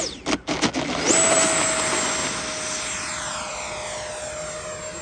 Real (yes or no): yes